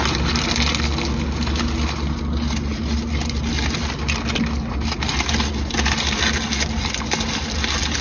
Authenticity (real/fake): real